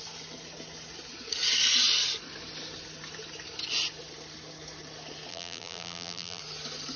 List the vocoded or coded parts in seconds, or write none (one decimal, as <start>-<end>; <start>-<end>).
5.3-6.4